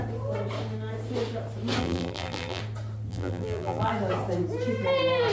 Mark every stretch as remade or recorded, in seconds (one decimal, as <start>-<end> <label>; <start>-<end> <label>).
0.0-1.8 recorded; 1.8-2.6 remade; 2.6-3.1 recorded; 3.1-3.9 remade; 3.9-5.3 recorded